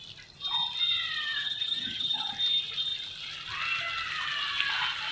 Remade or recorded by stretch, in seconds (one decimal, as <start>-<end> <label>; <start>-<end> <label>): 0.0-1.2 recorded; 1.2-2.3 remade; 2.3-5.1 recorded